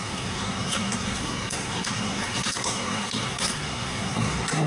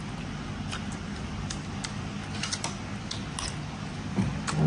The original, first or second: second